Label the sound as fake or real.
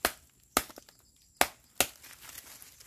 real